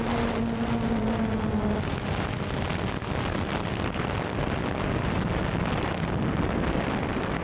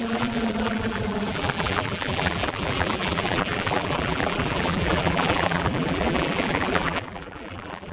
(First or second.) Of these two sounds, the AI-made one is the second